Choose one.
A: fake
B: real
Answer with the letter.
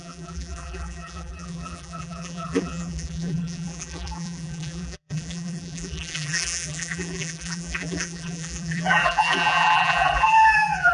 A